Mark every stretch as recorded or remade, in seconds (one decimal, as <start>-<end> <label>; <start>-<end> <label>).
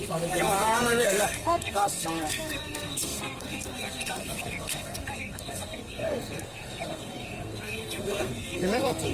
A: 0.0-9.1 remade